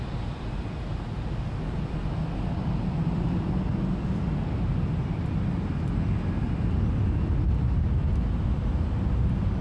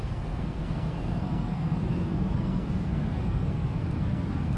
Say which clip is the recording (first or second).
first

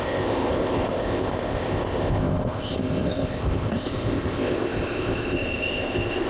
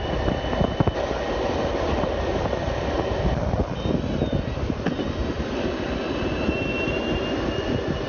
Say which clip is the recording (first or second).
second